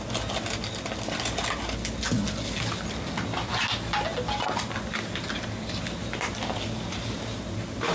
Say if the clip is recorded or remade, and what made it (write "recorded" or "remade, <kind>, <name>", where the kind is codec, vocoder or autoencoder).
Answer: recorded